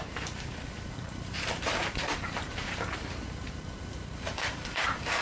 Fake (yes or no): yes